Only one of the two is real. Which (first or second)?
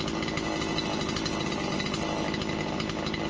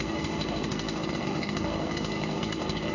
first